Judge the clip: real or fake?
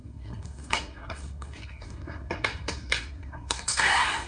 fake